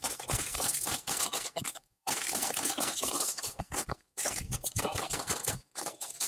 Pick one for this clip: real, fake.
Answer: fake